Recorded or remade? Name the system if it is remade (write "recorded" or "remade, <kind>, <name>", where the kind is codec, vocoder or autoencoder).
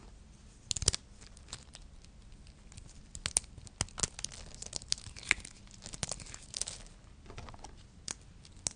recorded